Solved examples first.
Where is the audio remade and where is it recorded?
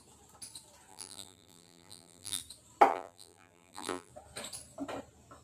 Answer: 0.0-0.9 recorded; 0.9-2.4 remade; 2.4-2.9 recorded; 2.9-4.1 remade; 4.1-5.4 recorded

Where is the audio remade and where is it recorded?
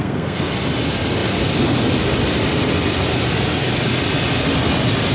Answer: 0.0-0.5 remade; 0.5-5.1 recorded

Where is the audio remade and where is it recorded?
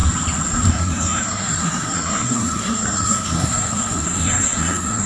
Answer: 0.0-0.7 recorded; 0.7-5.1 remade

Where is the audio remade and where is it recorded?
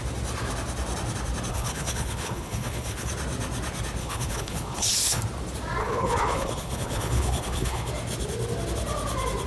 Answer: 0.0-1.5 recorded; 1.5-3.1 remade; 3.1-4.0 recorded; 4.0-5.2 remade; 5.2-5.8 recorded; 5.8-7.9 remade; 7.9-9.5 recorded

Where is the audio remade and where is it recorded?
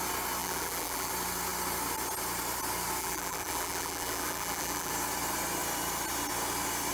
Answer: 0.0-0.4 recorded; 0.4-1.1 remade; 1.1-3.0 recorded; 3.0-4.9 remade; 4.9-6.9 recorded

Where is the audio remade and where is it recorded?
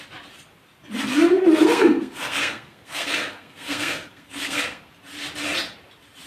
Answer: 0.0-1.1 recorded; 1.1-4.9 remade; 4.9-6.3 recorded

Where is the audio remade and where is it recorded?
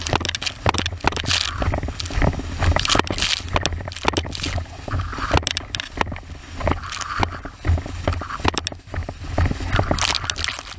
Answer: 0.0-10.8 recorded